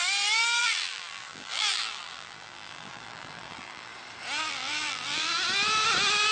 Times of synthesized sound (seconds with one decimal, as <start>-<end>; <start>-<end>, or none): 0.6-3.9; 4.4-5.3